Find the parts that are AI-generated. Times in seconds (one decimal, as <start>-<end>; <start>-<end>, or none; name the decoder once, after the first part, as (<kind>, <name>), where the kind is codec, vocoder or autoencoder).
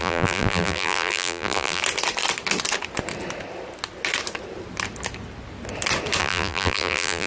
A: 0.0-1.8 (vocoder, BigVGAN v2); 6.2-7.3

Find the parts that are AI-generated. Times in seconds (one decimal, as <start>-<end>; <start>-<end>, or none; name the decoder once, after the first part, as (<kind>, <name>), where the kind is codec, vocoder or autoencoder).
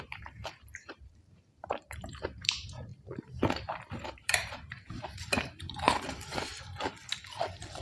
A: 0.0-6.5 (vocoder, BigVGAN v2)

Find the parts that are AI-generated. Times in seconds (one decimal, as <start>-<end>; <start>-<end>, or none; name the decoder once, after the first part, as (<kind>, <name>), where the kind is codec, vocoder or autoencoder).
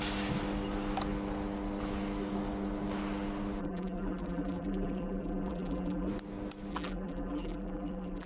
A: 3.6-6.1 (vocoder, BigVGAN v2); 6.7-8.3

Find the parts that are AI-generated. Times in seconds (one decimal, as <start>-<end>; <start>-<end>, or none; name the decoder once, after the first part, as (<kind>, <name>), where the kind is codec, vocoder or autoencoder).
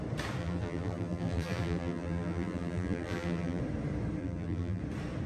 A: 0.4-3.6 (vocoder, BigVGAN v2); 4.2-4.8